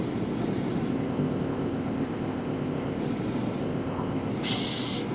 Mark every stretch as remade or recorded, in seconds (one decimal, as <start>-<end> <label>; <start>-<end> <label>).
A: 0.0-0.9 recorded; 0.9-3.0 remade; 3.0-3.6 recorded; 3.6-4.3 remade; 4.3-5.1 recorded